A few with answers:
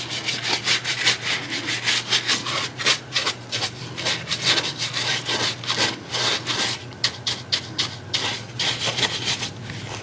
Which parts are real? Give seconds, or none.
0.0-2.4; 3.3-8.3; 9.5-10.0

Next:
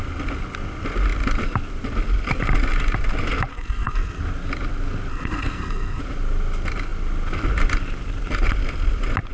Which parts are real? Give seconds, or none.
0.0-3.5; 4.2-5.1; 6.0-9.3

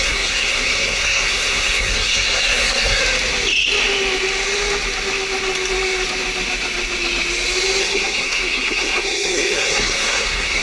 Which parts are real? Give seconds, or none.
3.0-7.8

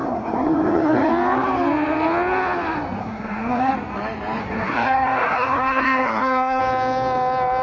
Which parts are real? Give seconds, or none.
1.1-3.0; 3.7-4.4; 6.6-7.6

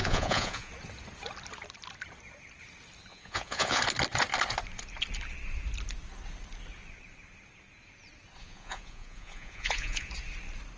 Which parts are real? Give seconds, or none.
0.7-3.1; 3.8-8.4; 10.1-10.8

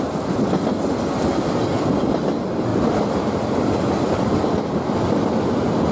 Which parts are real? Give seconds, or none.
0.0-2.7; 3.6-5.9